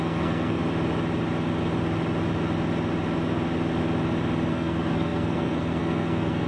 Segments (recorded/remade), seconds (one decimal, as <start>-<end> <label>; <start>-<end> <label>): 0.0-0.6 remade; 0.6-4.5 recorded; 4.5-6.5 remade